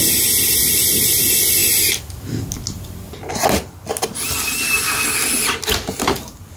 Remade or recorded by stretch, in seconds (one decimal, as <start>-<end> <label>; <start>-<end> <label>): 0.0-6.6 recorded